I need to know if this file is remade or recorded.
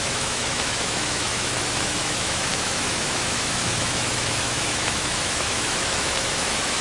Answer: remade